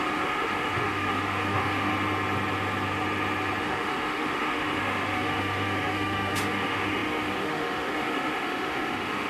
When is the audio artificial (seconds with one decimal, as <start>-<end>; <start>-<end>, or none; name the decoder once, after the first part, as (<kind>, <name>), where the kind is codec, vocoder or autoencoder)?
0.0-1.9 (autoencoder, DAC-VAE); 3.6-9.3